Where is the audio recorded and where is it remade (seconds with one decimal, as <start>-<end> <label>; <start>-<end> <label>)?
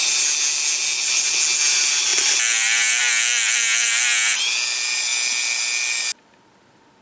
0.0-7.0 recorded